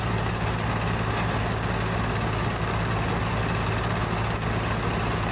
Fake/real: real